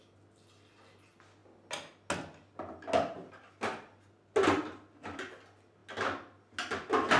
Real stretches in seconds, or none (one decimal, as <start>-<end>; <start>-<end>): 0.0-7.2

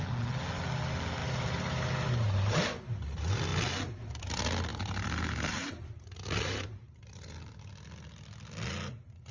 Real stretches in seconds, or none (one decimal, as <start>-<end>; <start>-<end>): 0.0-1.2; 2.6-4.7; 7.5-9.3